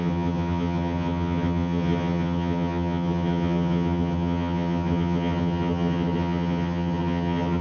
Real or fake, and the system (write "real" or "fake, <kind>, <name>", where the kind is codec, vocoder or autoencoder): fake, vocoder, HiFi-GAN